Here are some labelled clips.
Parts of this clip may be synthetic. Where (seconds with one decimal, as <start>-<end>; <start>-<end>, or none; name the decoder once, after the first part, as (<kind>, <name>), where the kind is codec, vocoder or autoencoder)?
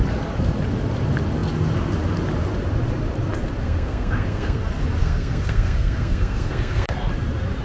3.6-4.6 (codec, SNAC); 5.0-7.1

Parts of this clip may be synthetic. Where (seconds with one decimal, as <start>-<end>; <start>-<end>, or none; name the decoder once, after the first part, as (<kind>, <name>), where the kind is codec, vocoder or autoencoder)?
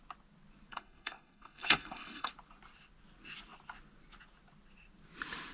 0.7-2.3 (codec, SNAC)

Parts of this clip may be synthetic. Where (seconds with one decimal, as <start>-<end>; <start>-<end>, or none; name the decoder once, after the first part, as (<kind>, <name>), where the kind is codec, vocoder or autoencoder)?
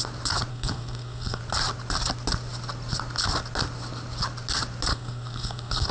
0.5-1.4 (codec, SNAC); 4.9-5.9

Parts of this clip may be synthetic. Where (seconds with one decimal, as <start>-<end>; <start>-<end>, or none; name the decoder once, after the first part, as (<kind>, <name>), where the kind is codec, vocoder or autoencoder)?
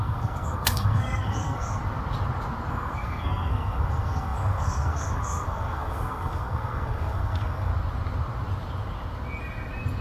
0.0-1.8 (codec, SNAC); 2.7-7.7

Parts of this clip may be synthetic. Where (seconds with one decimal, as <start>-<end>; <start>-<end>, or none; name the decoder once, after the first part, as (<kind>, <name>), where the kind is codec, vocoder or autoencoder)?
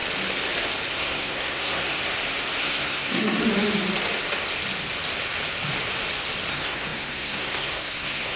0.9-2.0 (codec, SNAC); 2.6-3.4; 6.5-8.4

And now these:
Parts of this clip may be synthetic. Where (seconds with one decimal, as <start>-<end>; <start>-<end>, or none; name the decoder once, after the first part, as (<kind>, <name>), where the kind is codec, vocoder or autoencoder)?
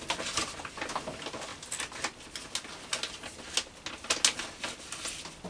none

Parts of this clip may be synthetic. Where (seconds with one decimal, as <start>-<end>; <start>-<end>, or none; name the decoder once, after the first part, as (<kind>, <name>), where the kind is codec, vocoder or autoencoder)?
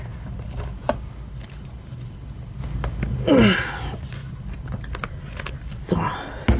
none